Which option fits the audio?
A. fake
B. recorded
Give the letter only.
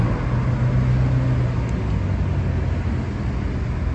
B